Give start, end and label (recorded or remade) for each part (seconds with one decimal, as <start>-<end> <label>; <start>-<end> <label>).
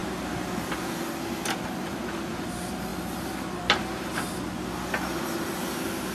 0.0-6.1 recorded